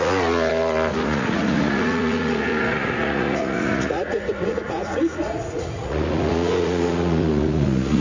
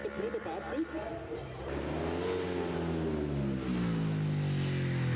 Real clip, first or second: second